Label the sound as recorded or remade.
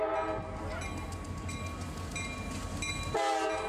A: recorded